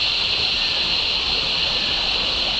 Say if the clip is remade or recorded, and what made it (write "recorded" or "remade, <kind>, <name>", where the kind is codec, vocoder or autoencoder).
recorded